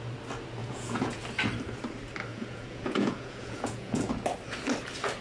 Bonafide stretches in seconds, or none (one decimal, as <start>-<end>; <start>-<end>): 0.0-0.6; 1.2-2.3; 4.1-5.2

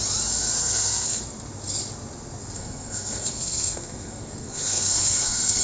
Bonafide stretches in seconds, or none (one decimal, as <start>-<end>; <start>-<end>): 0.0-0.6; 1.2-2.4

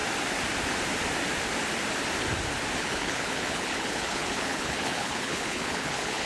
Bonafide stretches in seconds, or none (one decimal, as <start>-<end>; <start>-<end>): 0.0-2.8

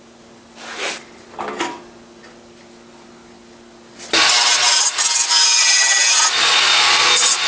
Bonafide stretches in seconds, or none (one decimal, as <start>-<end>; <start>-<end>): 0.0-7.5

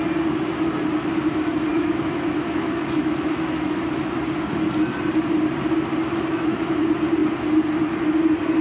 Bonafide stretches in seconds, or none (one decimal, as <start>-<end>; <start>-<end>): 0.0-1.7; 3.9-6.0; 6.8-8.6

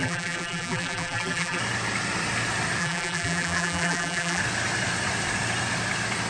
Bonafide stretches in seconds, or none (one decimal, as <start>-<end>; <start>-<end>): 1.6-2.8; 4.4-6.3

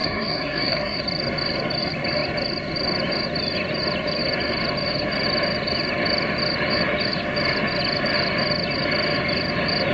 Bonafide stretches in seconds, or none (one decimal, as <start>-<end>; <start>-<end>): 1.0-9.9

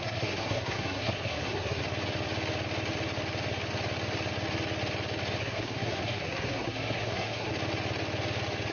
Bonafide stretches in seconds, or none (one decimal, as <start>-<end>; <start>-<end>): 1.8-5.4; 7.5-8.7